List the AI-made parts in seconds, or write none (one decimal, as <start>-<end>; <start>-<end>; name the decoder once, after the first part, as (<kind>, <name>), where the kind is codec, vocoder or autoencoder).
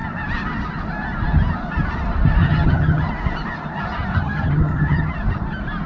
2.4-3.1 (vocoder, HiFi-GAN); 4.1-5.1